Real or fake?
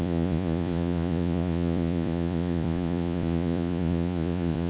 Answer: fake